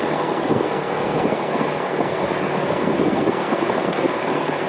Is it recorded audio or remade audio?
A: remade